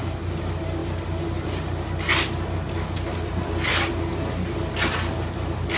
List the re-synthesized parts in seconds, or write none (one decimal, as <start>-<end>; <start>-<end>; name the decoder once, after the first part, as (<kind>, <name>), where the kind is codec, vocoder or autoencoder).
none